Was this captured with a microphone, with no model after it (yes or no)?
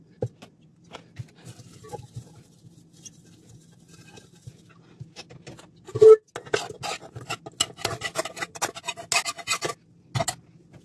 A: yes